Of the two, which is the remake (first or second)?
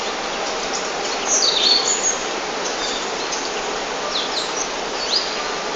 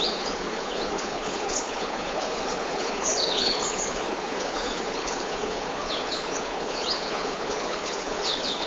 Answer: second